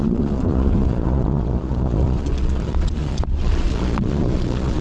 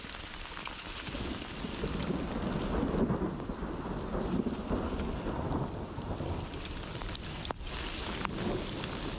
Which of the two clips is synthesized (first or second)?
first